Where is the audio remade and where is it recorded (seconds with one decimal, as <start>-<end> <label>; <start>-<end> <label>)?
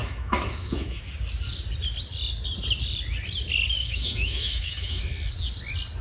0.0-1.0 remade; 1.0-3.8 recorded; 3.8-5.0 remade; 5.0-6.0 recorded